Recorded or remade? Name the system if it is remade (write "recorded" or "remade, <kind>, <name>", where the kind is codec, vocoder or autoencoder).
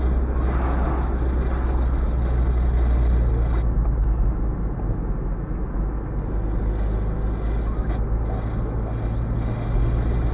recorded